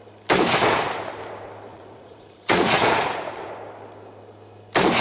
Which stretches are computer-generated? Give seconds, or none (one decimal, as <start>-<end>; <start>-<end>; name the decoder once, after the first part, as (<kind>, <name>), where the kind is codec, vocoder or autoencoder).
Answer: 1.7-3.5 (vocoder, Vocos)